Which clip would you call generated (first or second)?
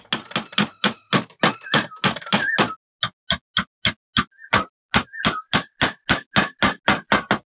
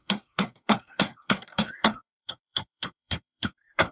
second